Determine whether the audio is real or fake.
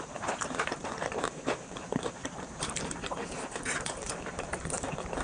fake